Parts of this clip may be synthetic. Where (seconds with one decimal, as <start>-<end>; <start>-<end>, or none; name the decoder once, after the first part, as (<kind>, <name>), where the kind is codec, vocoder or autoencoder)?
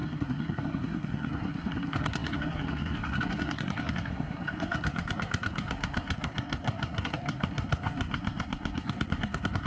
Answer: 0.0-9.7 (codec, SNAC)